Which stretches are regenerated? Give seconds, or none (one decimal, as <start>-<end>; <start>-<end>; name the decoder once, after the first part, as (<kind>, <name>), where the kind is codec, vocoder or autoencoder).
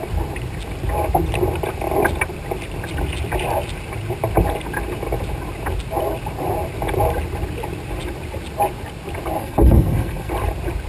9.4-10.3 (codec, SNAC)